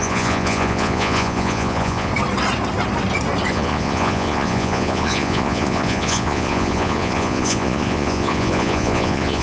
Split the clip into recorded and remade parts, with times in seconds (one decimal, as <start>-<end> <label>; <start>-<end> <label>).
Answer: 0.0-2.1 remade; 2.1-3.5 recorded; 3.5-9.4 remade